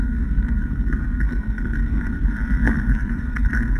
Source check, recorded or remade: remade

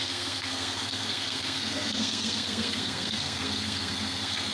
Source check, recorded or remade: remade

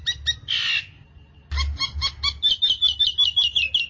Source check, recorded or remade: recorded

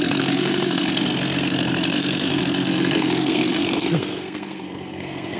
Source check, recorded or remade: remade